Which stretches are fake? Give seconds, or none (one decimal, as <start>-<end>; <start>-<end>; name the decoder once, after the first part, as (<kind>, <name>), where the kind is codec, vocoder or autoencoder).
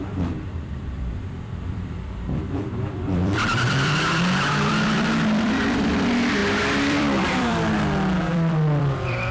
0.0-9.3 (vocoder, BigVGAN v2)